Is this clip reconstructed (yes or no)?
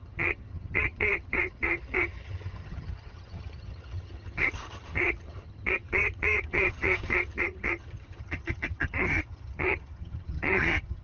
yes